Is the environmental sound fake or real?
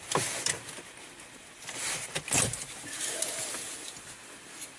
real